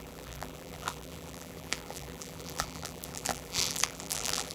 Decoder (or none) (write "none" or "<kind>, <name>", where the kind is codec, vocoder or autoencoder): vocoder, BigVGAN v2